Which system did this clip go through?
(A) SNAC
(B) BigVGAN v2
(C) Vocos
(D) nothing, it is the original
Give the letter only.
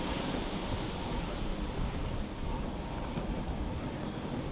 D